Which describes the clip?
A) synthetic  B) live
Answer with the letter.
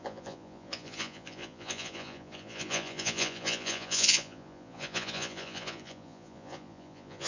A